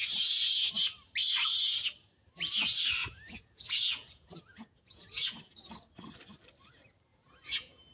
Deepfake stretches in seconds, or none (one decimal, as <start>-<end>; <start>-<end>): 3.0-5.7; 7.1-7.9